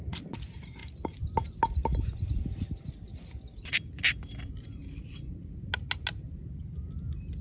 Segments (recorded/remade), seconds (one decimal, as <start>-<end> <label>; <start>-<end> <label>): 0.0-7.4 recorded